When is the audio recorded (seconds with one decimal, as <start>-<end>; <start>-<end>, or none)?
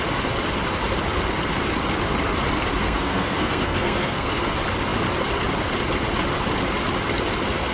0.0-2.8; 4.4-7.7